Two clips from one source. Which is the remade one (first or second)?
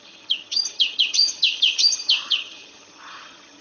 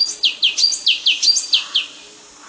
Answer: first